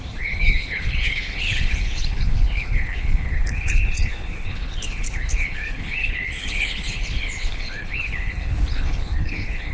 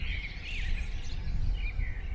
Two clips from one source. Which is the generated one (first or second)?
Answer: first